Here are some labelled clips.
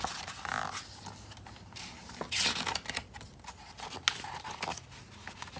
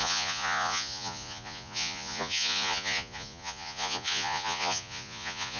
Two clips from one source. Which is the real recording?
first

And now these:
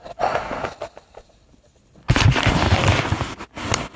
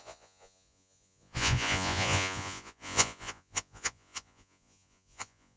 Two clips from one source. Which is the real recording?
first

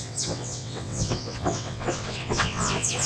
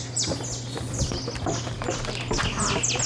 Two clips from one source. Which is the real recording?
second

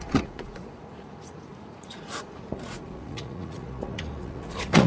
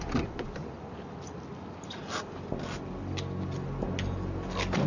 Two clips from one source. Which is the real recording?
second